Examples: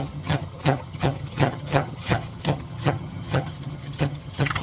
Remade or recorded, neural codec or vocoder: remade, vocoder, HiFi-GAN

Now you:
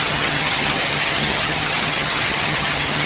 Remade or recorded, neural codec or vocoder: remade, vocoder, HiFi-GAN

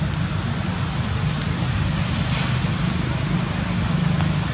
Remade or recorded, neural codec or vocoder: recorded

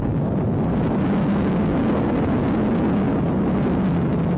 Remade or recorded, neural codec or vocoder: recorded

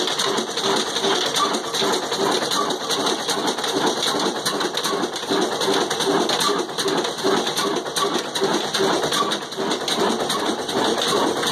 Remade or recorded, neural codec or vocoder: recorded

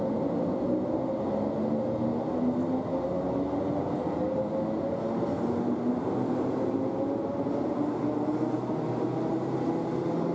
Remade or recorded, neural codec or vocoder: recorded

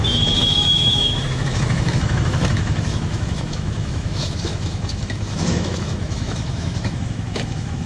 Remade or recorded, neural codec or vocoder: remade, autoencoder, DAC-VAE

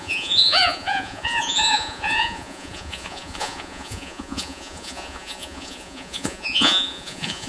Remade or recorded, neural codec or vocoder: remade, vocoder, Vocos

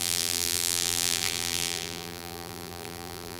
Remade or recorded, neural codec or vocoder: remade, vocoder, BigVGAN v2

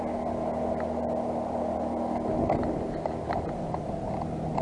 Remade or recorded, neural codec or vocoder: recorded